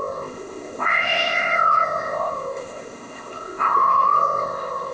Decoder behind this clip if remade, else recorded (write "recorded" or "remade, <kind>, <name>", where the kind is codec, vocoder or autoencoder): remade, codec, ZipCodec